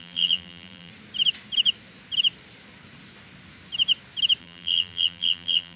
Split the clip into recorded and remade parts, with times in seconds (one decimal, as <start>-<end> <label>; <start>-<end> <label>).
0.0-0.9 remade; 0.9-4.4 recorded; 4.4-5.8 remade